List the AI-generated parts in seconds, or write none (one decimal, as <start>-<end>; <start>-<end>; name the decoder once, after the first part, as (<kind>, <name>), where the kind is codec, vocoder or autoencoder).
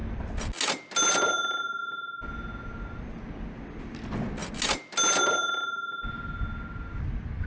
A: none